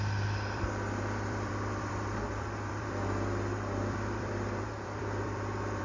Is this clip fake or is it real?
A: fake